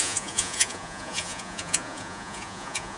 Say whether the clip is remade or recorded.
remade